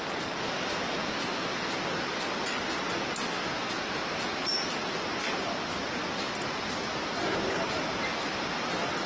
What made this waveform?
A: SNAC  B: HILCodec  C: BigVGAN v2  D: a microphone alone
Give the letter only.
D